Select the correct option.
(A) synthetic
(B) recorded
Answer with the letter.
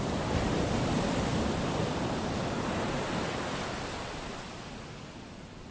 B